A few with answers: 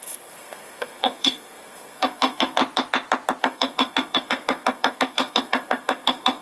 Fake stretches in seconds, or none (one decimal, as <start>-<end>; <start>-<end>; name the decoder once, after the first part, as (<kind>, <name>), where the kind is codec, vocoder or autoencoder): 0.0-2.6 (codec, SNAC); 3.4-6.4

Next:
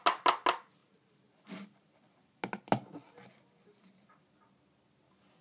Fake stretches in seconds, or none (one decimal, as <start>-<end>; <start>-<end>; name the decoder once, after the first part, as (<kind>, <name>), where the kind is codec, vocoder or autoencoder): none

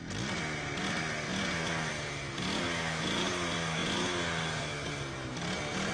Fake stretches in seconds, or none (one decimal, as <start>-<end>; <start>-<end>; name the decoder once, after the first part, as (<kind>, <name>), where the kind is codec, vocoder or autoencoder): none

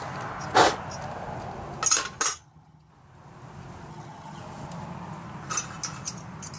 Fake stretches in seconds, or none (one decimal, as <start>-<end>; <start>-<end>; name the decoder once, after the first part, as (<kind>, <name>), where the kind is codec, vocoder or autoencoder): 2.3-2.9 (vocoder, HiFi-GAN); 3.9-4.4